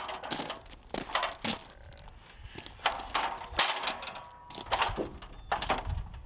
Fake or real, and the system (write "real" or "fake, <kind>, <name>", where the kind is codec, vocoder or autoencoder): real